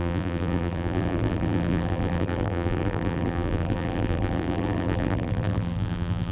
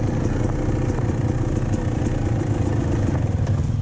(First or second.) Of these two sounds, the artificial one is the first